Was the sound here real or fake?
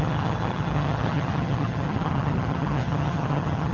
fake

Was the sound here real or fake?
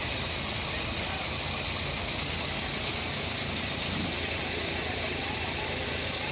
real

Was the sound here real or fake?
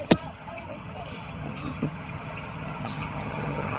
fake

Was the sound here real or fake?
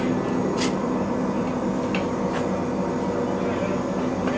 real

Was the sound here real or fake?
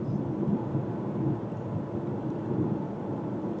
real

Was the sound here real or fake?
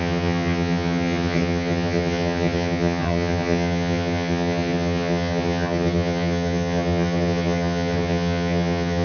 fake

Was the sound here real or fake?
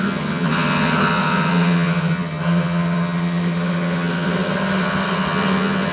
fake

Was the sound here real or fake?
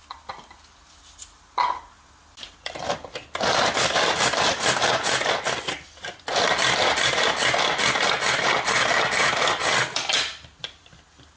real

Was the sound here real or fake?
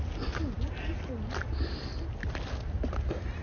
real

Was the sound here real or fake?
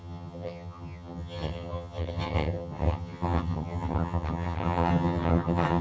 fake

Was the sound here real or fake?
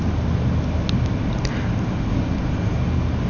real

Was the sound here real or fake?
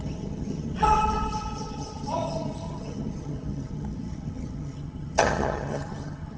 fake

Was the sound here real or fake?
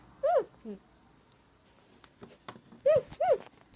real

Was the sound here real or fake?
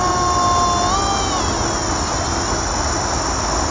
real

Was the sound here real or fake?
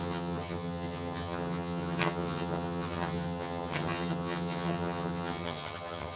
fake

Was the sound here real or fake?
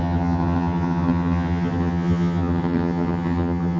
fake